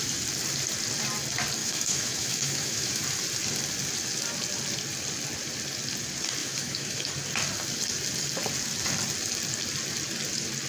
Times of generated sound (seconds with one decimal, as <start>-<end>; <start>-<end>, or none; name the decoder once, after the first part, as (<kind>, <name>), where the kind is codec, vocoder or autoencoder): 1.6-3.0 (autoencoder, DAC-VAE); 6.4-7.1